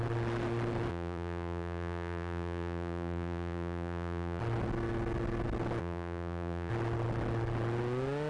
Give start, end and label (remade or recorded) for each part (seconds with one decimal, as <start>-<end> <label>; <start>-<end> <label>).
0.0-0.9 recorded; 0.9-4.4 remade; 4.4-5.8 recorded; 5.8-6.7 remade; 6.7-8.3 recorded